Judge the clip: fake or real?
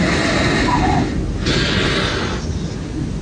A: real